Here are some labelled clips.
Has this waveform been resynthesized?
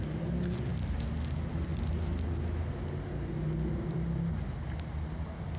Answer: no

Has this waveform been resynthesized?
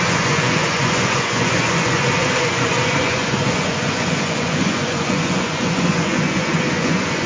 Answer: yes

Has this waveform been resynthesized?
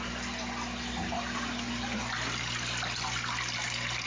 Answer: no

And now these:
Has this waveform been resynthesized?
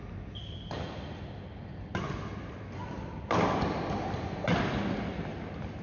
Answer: no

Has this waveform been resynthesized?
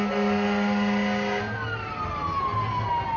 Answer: no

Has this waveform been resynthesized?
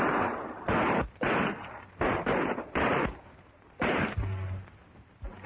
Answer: yes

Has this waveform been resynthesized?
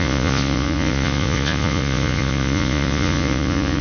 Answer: yes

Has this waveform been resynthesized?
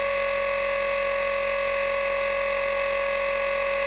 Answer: no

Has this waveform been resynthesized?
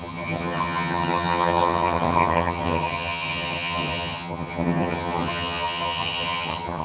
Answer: yes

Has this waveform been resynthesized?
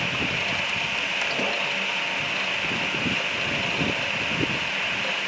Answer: no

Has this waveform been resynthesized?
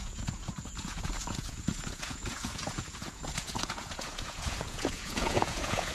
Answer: yes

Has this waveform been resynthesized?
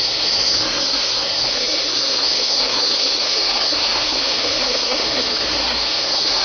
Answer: yes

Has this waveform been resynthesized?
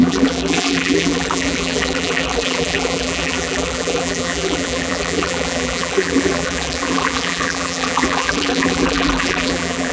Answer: yes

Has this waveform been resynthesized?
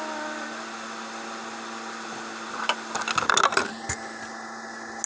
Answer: no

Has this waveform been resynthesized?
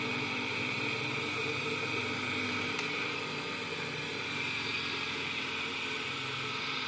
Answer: yes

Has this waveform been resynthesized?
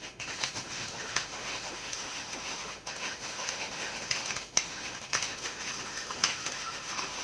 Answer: yes